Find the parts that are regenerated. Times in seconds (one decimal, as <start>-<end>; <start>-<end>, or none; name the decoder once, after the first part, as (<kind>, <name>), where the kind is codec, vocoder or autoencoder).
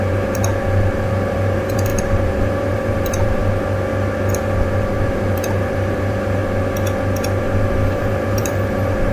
0.0-3.4 (vocoder, BigVGAN v2); 4.3-6.4; 7.4-9.1